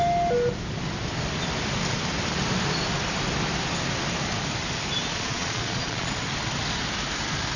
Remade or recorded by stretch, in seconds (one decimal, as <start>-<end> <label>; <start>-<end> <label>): 0.0-5.1 recorded; 5.1-6.1 remade; 6.1-7.6 recorded